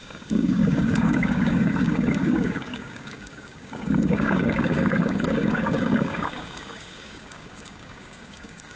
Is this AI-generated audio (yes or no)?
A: yes